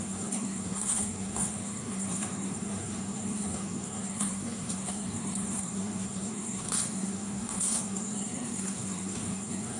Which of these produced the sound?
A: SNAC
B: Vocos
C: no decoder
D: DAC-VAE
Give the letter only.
A